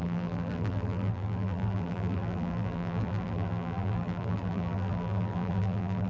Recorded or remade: remade